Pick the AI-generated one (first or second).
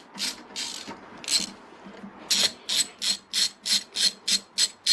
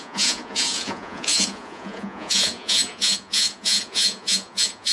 second